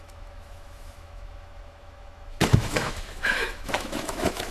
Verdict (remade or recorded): remade